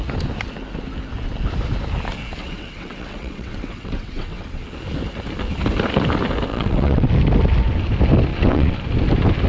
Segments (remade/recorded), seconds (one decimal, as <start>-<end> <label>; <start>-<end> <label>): 0.0-2.4 recorded; 2.4-4.6 remade; 4.6-6.5 recorded; 6.5-7.1 remade; 7.1-8.3 recorded; 8.3-8.8 remade; 8.8-9.5 recorded